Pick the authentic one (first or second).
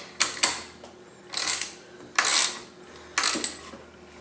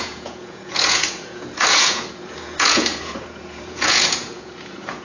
first